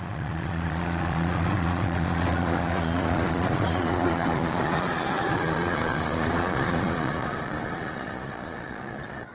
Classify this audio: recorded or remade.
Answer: remade